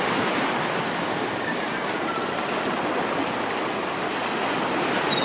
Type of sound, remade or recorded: recorded